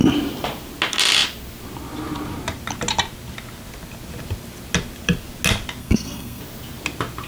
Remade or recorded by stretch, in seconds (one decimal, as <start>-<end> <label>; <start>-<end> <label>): 0.0-5.8 recorded; 5.8-6.4 remade; 6.4-7.3 recorded